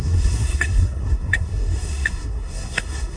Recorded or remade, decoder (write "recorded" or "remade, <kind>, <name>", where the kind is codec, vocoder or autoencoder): remade, codec, SNAC